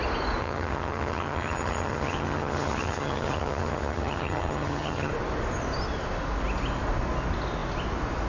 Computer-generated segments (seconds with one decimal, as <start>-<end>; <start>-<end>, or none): 0.4-5.1